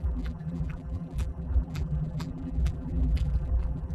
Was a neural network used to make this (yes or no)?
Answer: yes